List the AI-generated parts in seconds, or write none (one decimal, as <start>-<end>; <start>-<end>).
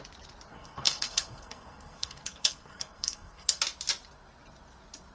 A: 0.5-3.6